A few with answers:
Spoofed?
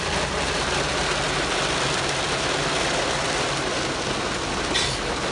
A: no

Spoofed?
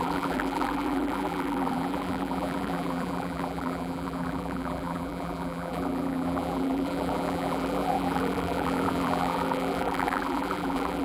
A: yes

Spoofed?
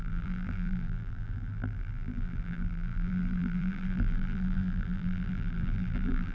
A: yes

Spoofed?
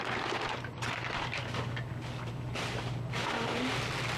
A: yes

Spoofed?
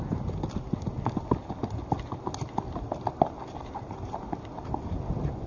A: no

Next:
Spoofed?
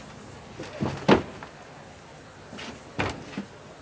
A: no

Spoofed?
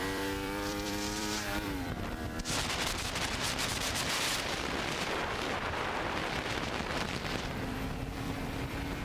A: yes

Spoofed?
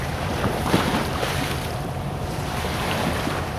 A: yes